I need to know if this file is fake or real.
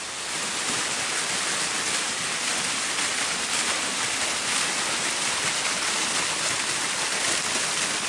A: real